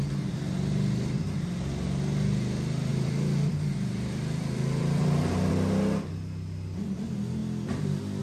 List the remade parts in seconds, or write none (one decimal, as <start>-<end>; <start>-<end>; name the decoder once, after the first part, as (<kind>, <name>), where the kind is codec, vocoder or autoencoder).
2.9-5.5 (vocoder, BigVGAN v2); 7.4-8.2